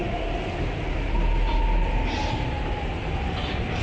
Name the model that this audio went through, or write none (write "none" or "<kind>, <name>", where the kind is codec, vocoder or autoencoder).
none